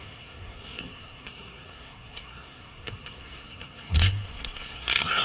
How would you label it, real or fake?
fake